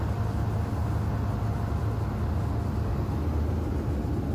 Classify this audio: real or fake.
real